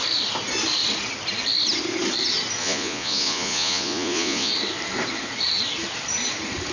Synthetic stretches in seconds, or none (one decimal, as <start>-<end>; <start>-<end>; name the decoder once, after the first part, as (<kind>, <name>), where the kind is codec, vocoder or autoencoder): 2.6-4.5 (vocoder, Vocos)